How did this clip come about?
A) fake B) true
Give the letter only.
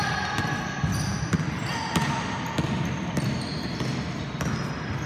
B